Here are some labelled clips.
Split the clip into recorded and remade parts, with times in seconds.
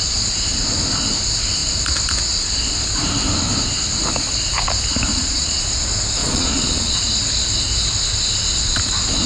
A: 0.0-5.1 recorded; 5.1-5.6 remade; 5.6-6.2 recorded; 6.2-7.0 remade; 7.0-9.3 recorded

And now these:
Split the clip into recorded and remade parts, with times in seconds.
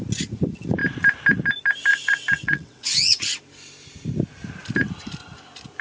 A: 0.0-1.9 recorded; 1.9-3.4 remade; 3.4-5.8 recorded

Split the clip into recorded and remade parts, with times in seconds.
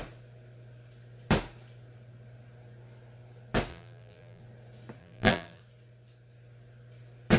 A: 0.0-3.7 recorded; 3.7-4.4 remade; 4.4-5.0 recorded; 5.0-5.6 remade; 5.6-7.4 recorded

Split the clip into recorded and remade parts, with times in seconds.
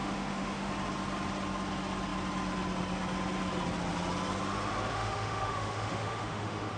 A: 0.0-0.7 remade; 0.7-4.9 recorded; 4.9-6.8 remade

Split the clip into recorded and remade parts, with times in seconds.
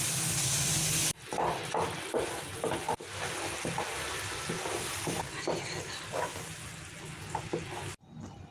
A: 0.0-8.5 recorded